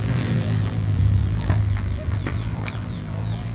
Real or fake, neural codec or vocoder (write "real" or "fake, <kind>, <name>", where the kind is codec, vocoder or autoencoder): fake, vocoder, BigVGAN v2